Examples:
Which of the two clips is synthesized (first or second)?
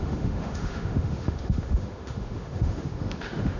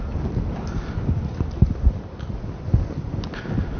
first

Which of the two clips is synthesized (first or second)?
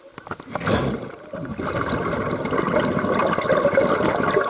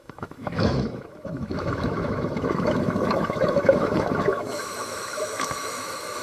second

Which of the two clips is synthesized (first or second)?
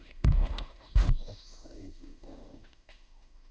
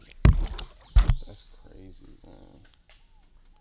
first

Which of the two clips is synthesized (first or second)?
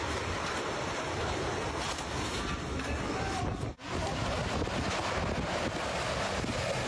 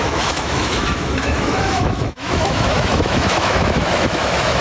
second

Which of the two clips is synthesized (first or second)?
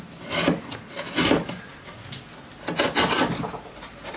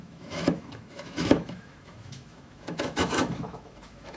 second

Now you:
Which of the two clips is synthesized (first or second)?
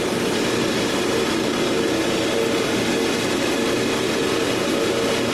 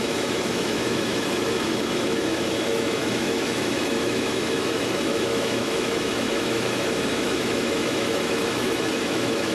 second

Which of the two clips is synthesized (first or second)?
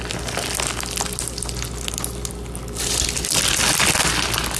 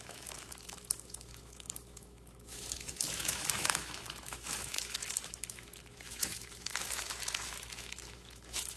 second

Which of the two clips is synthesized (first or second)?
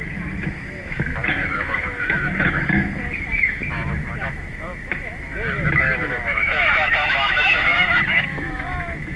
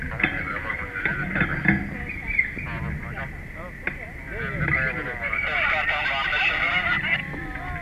first